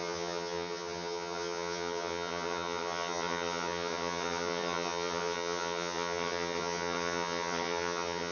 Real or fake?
fake